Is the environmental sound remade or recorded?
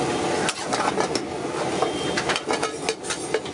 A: recorded